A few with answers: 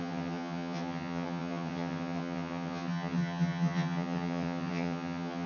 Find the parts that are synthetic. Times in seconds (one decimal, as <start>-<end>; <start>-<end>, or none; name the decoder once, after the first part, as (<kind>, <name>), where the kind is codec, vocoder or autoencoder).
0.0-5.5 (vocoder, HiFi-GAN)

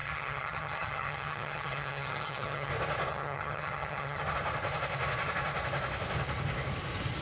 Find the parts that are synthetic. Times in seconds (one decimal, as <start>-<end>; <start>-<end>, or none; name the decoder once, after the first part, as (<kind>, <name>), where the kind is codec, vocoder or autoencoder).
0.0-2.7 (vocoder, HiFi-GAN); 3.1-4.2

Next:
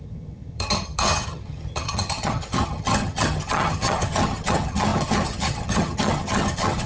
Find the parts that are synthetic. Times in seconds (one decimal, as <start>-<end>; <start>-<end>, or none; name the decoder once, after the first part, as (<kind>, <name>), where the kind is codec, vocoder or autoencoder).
0.0-6.9 (vocoder, HiFi-GAN)

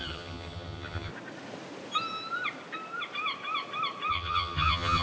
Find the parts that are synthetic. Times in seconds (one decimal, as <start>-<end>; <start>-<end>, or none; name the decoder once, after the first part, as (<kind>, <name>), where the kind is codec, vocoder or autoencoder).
0.0-1.1 (vocoder, HiFi-GAN); 4.1-5.0

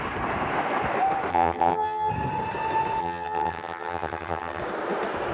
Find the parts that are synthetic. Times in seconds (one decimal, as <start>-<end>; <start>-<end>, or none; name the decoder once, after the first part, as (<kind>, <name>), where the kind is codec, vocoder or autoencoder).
1.3-2.1 (vocoder, HiFi-GAN); 3.0-4.6